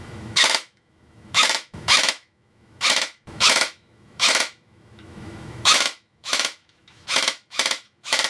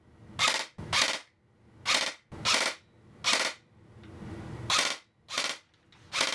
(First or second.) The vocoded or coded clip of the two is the first